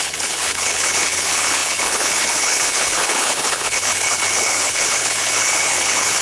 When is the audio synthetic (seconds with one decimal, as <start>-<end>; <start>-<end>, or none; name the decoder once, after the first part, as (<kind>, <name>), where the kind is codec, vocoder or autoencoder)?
0.0-6.2 (codec, HILCodec)

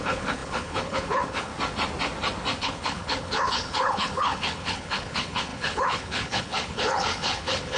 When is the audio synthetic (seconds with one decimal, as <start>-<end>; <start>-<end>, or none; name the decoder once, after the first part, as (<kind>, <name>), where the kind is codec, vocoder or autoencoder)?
0.0-1.5 (codec, HILCodec); 2.6-7.8

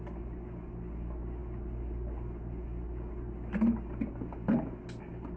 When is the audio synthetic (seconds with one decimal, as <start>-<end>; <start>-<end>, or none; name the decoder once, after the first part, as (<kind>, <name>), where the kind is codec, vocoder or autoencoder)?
none

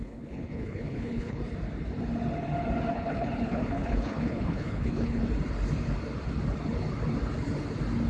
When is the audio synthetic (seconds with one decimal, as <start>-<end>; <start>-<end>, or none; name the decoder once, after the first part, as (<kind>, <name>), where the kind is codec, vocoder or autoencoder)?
0.0-1.4 (codec, HILCodec); 2.9-5.2

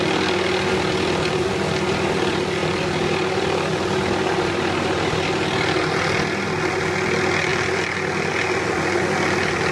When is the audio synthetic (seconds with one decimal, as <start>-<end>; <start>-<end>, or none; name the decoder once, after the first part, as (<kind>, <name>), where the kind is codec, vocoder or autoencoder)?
none